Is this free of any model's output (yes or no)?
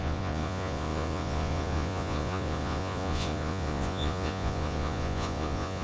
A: no